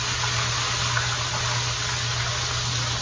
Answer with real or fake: real